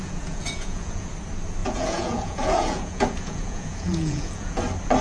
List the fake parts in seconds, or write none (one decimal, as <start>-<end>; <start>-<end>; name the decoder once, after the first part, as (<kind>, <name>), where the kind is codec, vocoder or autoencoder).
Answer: 0.0-1.1 (vocoder, Vocos); 1.6-4.6